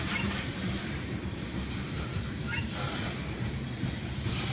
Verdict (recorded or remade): remade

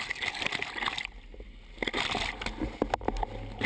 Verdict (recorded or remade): recorded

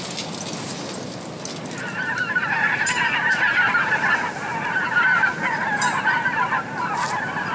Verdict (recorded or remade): recorded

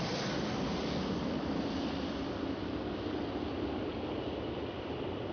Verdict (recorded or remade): recorded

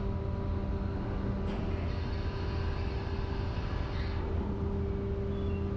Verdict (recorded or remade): recorded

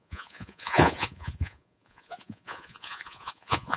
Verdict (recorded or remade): remade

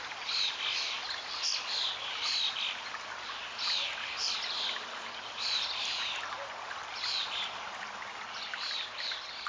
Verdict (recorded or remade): recorded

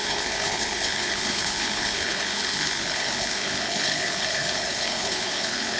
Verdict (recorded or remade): remade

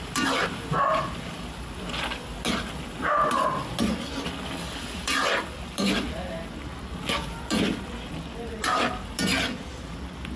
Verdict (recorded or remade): recorded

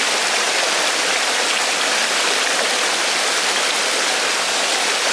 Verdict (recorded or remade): recorded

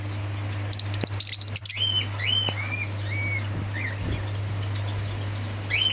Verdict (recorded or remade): recorded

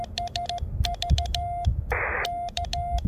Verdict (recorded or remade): recorded